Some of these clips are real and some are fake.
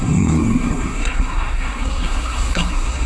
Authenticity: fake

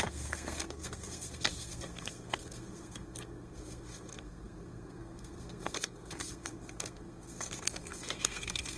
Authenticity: fake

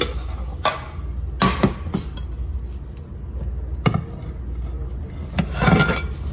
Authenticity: real